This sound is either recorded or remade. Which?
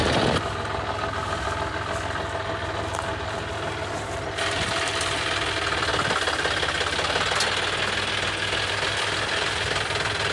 recorded